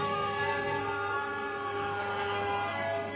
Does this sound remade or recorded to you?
remade